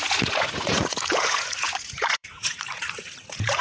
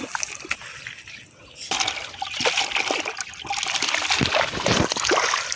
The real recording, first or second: second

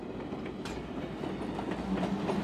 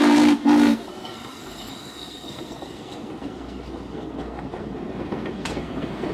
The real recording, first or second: first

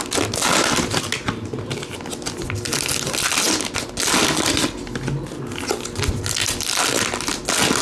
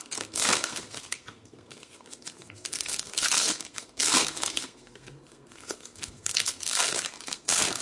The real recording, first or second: first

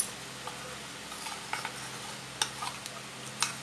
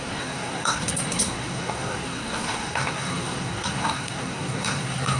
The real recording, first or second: first